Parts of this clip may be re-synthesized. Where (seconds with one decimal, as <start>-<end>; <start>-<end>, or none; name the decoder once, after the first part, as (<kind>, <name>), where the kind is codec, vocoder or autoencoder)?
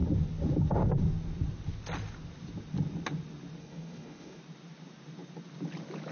3.6-4.4 (codec, HILCodec)